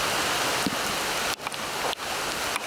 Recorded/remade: recorded